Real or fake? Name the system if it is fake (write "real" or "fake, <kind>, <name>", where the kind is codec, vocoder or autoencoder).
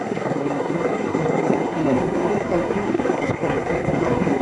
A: fake, codec, SNAC